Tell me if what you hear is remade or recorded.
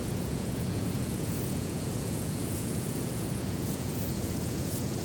remade